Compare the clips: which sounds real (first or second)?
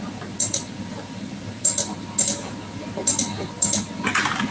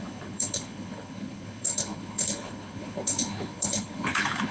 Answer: first